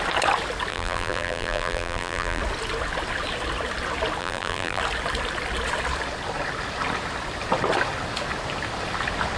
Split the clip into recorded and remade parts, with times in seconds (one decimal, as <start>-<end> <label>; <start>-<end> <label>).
0.0-0.7 recorded; 0.7-2.4 remade; 2.4-4.2 recorded; 4.2-4.8 remade; 4.8-9.4 recorded